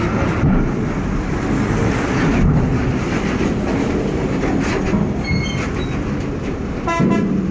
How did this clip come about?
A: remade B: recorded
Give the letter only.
B